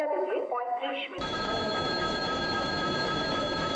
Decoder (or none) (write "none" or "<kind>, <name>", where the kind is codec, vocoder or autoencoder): autoencoder, DAC-VAE